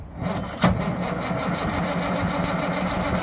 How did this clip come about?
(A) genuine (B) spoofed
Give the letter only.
A